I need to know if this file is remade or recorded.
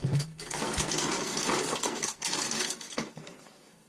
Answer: remade